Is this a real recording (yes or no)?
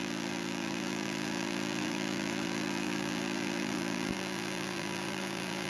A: no